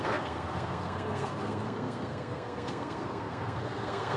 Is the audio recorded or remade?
remade